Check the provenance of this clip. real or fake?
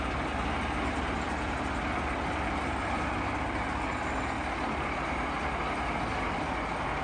real